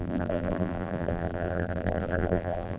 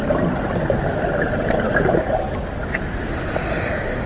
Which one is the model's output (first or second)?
first